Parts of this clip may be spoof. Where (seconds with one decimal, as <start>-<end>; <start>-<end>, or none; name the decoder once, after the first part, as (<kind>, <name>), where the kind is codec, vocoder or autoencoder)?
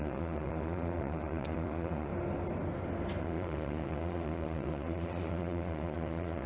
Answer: 0.0-2.1 (vocoder, Vocos); 3.2-6.5